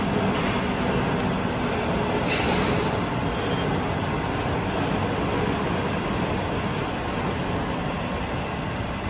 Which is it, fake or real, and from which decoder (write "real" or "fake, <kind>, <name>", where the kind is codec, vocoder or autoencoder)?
real